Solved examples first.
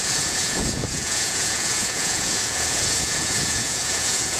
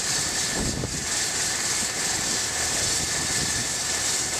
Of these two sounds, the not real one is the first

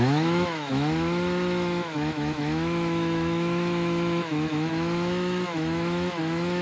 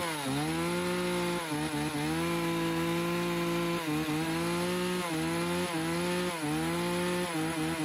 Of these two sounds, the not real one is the first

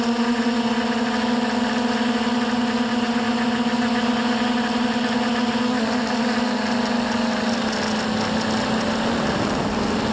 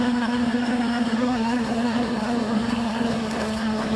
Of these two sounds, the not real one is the second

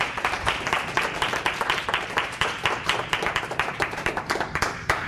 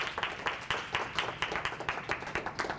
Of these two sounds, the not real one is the first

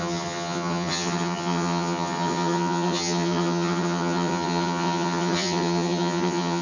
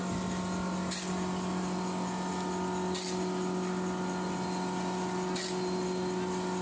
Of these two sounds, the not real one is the first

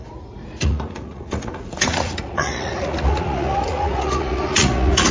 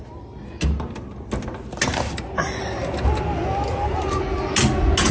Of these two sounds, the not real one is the first